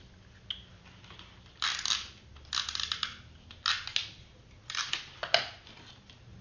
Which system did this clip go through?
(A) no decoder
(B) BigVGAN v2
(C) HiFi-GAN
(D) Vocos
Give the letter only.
A